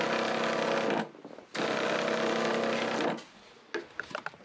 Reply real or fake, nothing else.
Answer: real